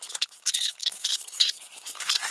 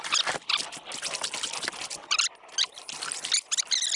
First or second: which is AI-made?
first